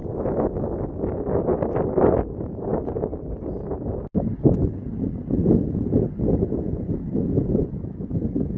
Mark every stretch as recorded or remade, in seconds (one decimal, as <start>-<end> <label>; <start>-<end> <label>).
0.0-8.6 recorded